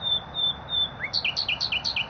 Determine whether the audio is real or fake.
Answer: real